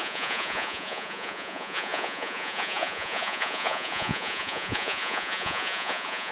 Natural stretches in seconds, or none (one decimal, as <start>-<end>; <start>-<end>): none